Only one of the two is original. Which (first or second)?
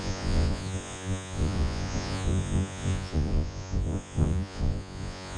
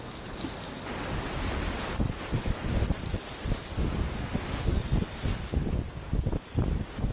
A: second